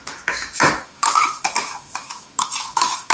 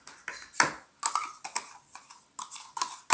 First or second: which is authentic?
second